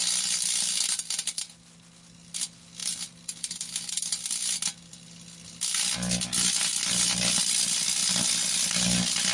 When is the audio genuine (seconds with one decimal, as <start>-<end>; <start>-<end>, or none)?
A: 0.0-9.3